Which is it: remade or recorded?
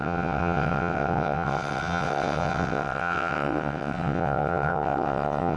remade